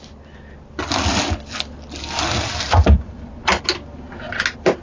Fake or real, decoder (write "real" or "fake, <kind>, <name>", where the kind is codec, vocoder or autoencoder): real